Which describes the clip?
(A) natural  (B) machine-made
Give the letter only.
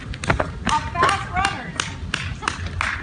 A